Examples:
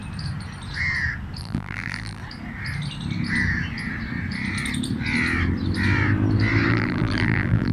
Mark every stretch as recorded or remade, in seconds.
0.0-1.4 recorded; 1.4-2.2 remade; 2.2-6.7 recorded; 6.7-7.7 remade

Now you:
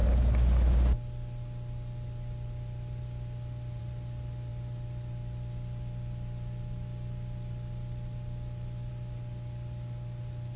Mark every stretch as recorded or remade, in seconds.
0.0-10.6 recorded